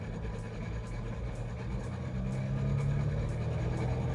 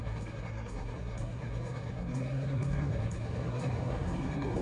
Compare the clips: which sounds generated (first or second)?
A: second